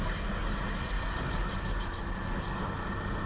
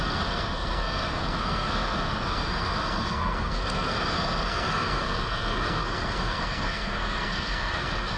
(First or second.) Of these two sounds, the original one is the first